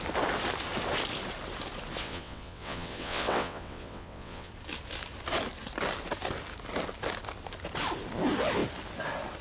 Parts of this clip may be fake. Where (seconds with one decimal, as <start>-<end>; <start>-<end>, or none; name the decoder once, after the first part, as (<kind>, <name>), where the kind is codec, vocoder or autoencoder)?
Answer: 2.0-4.5 (vocoder, WaveNeXt)